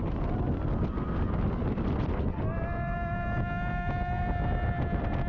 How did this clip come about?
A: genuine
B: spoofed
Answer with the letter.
A